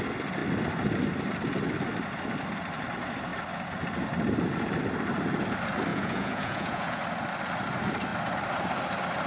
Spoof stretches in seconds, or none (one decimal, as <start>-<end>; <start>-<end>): 5.9-7.0